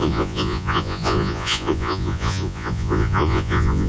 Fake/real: fake